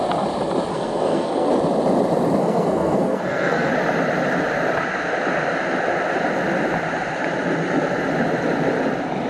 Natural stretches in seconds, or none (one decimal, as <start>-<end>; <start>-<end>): 0.0-0.7; 1.5-2.4; 3.7-9.3

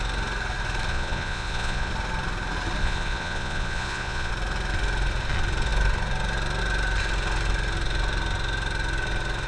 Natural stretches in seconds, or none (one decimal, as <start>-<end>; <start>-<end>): 0.0-0.9; 1.9-2.8; 4.3-9.5

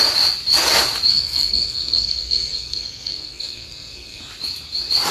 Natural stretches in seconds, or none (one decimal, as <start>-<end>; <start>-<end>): 0.0-1.1; 4.2-5.1

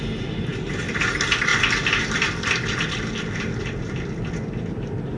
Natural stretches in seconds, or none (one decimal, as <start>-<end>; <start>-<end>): 0.0-5.2

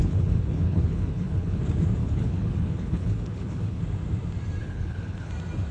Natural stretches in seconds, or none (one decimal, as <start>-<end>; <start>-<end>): 1.6-2.0; 3.8-4.6; 5.3-5.7